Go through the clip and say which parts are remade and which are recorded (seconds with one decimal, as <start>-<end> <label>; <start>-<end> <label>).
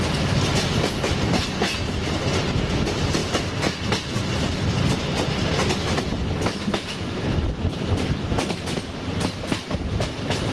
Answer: 0.0-10.5 recorded